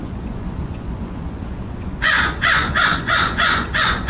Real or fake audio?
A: fake